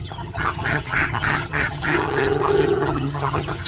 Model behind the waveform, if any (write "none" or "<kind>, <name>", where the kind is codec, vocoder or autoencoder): vocoder, HiFi-GAN